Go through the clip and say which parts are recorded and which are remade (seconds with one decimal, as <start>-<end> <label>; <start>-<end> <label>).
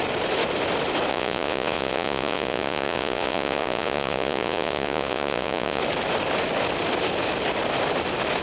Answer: 0.0-1.1 recorded; 1.1-5.8 remade; 5.8-8.4 recorded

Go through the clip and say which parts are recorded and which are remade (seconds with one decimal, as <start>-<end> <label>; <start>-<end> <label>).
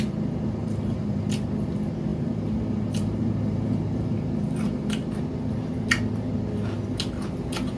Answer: 0.0-0.6 recorded; 0.6-1.2 remade; 1.2-2.1 recorded; 2.1-5.1 remade; 5.1-7.8 recorded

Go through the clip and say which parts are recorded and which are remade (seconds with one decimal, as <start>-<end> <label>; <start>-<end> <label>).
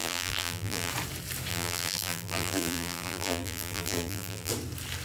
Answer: 0.0-0.9 remade; 0.9-1.5 recorded; 1.5-4.5 remade; 4.5-5.0 recorded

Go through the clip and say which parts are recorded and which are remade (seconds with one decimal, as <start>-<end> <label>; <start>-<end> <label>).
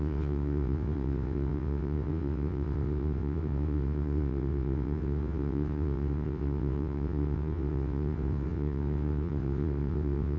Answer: 0.0-10.4 remade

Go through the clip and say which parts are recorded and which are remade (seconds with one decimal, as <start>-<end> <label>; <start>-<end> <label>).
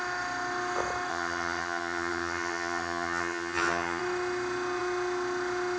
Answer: 0.0-1.1 recorded; 1.1-4.0 remade; 4.0-5.8 recorded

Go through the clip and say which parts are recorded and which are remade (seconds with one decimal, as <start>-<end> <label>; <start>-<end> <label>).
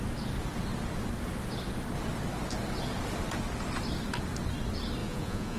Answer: 0.0-5.0 recorded; 5.0-5.6 remade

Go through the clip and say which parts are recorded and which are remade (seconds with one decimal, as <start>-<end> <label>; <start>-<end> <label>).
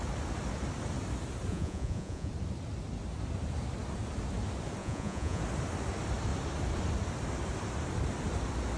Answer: 0.0-1.5 recorded; 1.5-2.3 remade; 2.3-4.8 recorded; 4.8-5.4 remade; 5.4-8.8 recorded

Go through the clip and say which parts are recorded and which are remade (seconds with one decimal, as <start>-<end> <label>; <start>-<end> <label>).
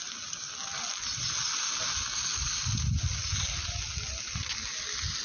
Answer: 0.0-5.2 recorded